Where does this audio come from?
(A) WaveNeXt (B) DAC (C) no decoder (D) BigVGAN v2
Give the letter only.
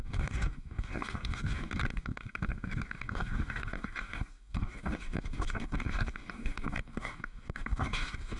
B